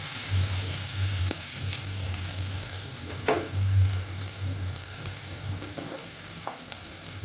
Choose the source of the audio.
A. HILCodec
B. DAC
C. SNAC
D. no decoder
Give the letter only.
B